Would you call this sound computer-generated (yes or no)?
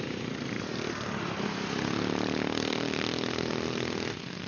no